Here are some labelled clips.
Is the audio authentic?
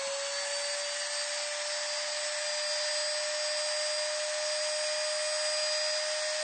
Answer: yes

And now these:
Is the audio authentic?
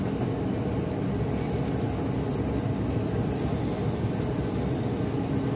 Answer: yes